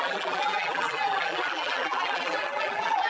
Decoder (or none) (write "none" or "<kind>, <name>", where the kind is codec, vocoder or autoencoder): vocoder, BigVGAN v2